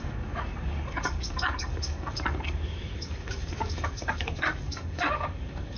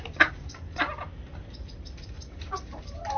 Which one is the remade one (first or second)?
first